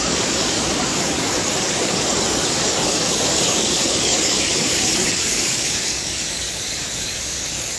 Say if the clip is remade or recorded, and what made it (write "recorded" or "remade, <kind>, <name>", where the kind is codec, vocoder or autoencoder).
remade, codec, DAC